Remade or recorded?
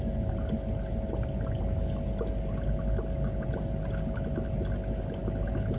recorded